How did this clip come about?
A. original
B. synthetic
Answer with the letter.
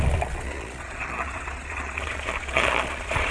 B